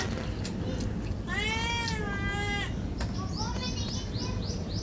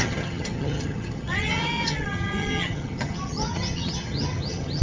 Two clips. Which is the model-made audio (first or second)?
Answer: second